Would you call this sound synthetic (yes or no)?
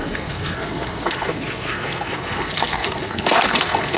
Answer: yes